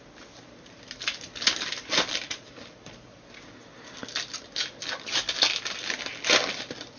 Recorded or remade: recorded